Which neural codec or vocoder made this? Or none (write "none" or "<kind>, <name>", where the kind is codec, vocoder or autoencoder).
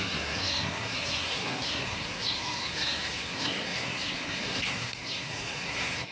codec, SNAC